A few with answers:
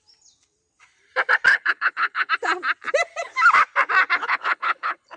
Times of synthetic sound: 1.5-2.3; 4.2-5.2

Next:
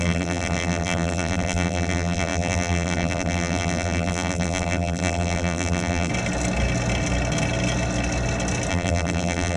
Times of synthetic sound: 0.0-6.1; 8.7-9.6

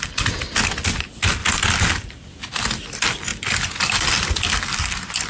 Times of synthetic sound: none